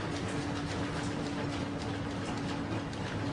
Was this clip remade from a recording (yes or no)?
no